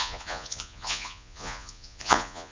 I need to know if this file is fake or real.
fake